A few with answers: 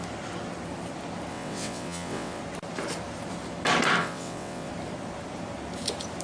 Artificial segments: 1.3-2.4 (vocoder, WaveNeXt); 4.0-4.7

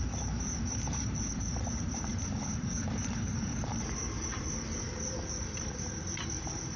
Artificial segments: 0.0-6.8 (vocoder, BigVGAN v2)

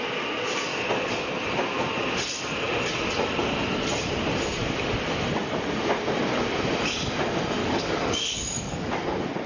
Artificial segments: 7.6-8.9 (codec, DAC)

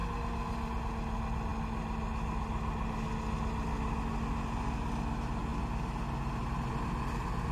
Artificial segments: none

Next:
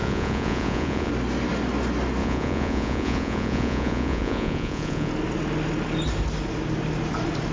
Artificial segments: 0.0-1.1 (vocoder, Vocos); 2.2-5.1

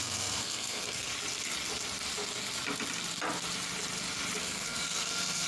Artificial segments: 0.0-1.1 (codec, SNAC); 4.4-5.5